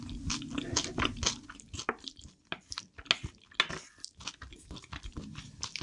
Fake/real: real